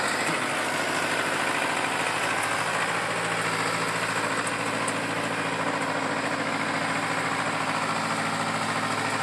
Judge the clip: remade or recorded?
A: recorded